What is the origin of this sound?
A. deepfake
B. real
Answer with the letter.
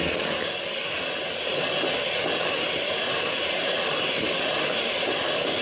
B